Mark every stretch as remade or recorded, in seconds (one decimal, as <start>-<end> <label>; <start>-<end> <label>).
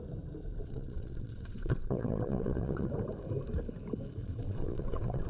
0.0-0.6 recorded; 0.6-2.9 remade; 2.9-4.2 recorded; 4.2-5.3 remade